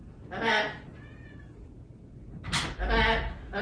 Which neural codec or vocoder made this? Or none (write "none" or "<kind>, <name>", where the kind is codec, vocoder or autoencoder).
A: none